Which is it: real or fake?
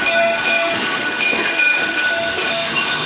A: fake